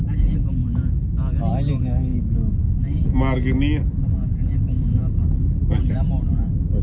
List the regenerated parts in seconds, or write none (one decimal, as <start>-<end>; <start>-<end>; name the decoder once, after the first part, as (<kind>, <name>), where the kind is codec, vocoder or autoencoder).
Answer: none